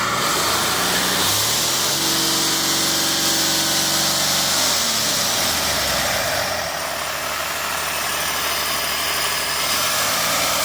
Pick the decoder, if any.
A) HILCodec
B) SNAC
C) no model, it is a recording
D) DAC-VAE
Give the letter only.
C